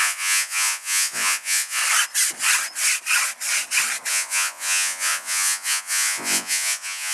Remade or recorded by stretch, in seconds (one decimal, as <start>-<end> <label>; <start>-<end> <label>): 0.0-1.8 remade; 1.8-4.1 recorded; 4.1-7.1 remade